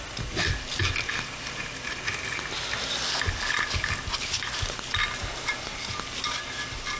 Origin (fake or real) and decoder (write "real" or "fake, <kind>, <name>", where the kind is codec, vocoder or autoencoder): real